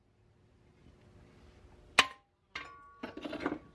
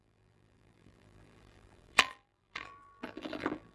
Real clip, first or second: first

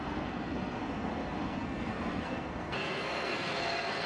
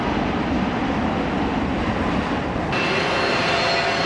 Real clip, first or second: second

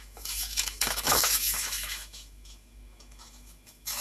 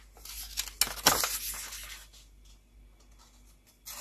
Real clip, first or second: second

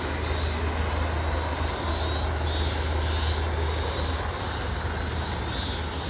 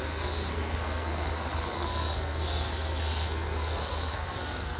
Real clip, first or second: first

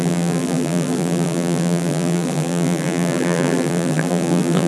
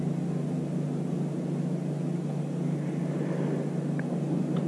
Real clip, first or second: second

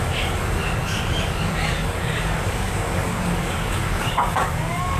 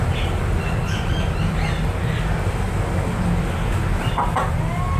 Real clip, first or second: second